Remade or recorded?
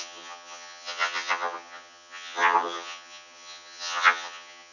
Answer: remade